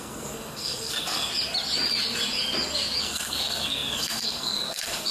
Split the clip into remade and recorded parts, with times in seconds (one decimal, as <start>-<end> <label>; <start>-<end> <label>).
0.0-1.3 remade; 1.3-3.0 recorded; 3.0-5.1 remade